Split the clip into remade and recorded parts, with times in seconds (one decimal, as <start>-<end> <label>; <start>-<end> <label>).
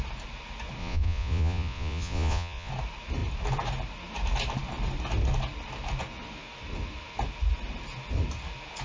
0.0-0.8 recorded; 0.8-2.7 remade; 2.7-8.8 recorded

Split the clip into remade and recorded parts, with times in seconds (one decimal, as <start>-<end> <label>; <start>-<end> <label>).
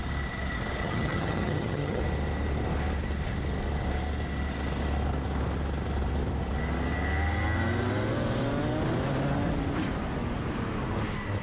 0.0-0.8 recorded; 0.8-2.0 remade; 2.0-11.4 recorded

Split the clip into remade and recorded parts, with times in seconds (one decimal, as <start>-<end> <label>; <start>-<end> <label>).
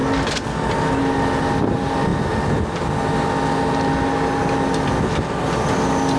0.0-6.2 recorded